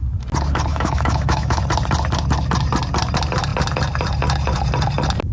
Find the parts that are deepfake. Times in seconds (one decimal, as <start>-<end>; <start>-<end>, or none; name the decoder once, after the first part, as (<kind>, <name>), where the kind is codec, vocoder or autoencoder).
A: 0.7-1.6 (autoencoder, DAC-VAE)